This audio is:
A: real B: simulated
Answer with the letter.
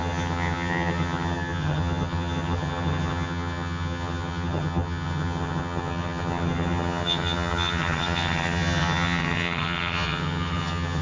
B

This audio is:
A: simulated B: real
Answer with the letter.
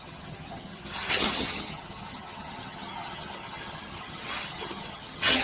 A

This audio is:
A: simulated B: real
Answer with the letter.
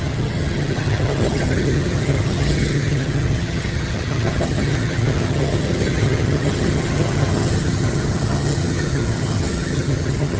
A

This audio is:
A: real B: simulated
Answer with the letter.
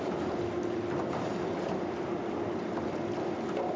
A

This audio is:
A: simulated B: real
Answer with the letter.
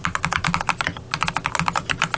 B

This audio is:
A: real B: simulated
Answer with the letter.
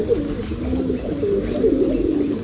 A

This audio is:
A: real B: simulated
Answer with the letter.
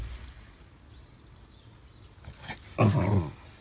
A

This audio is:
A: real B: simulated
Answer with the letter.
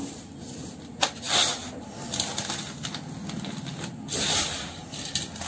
A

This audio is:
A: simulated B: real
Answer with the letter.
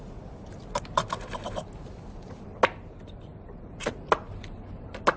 B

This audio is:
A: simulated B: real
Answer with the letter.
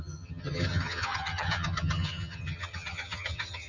A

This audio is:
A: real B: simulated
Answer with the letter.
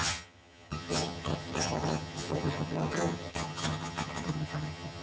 B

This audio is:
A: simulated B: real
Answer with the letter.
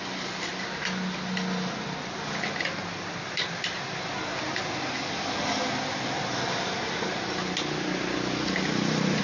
B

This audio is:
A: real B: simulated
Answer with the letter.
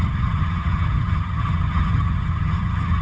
B